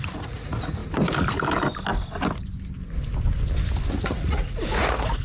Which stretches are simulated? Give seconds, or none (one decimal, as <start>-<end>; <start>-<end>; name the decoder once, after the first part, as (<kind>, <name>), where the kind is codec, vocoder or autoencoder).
0.0-0.8 (vocoder, Vocos); 3.9-5.2